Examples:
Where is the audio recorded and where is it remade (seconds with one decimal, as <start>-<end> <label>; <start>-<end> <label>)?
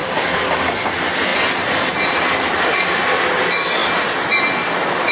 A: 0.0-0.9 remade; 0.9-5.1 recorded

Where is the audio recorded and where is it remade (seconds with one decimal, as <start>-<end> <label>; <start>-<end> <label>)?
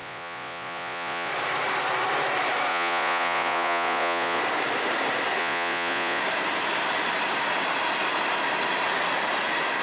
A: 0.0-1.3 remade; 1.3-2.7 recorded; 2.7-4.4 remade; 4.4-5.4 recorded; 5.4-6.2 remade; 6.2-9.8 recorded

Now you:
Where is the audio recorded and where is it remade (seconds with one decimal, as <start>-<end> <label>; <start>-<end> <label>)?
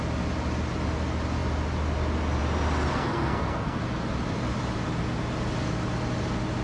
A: 0.0-2.9 recorded; 2.9-3.8 remade; 3.8-6.6 recorded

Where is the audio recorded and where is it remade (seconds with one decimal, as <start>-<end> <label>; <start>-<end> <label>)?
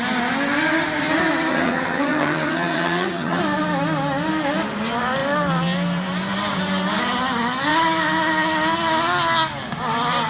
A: 0.0-1.5 recorded; 1.5-3.4 remade; 3.4-10.3 recorded